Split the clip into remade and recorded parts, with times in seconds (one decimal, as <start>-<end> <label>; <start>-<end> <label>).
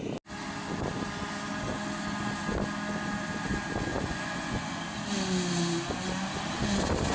0.0-3.9 recorded; 3.9-4.7 remade; 4.7-7.1 recorded